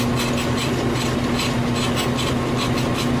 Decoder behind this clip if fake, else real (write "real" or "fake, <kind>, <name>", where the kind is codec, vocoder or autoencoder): real